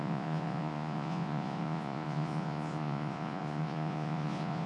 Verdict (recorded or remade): remade